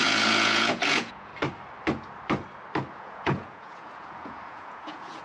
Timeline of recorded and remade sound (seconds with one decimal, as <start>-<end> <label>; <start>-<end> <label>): 0.0-1.3 remade; 1.3-2.9 recorded; 2.9-5.2 remade